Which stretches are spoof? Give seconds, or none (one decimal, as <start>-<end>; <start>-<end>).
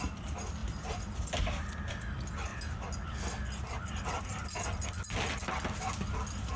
none